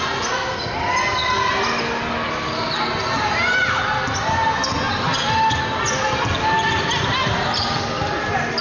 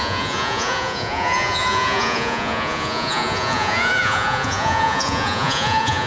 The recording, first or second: first